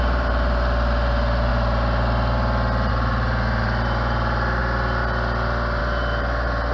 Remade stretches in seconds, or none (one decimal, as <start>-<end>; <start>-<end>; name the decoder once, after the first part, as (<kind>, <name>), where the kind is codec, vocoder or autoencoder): 0.0-1.5 (vocoder, BigVGAN v2); 2.9-4.6; 5.8-6.7